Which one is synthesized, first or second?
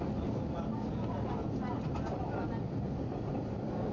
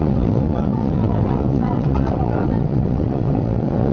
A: second